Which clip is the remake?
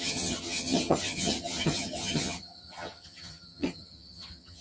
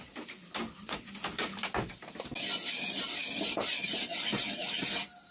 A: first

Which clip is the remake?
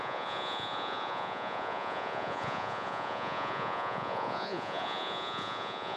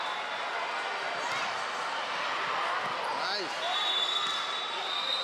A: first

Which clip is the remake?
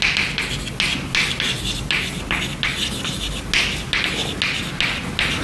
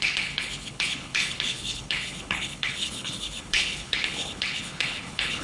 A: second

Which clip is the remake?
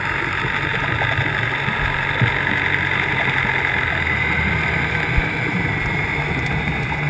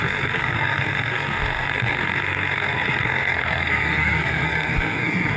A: second